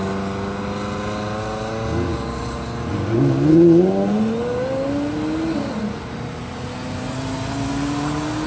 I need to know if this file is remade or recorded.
recorded